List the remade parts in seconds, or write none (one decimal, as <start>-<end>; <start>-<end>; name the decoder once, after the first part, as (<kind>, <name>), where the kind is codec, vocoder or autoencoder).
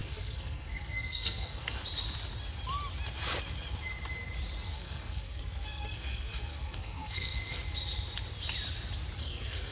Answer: 0.0-1.8 (codec, SNAC); 4.7-7.6; 9.2-9.7